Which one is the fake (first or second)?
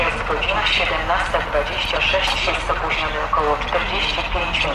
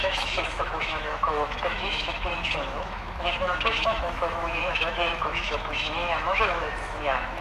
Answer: second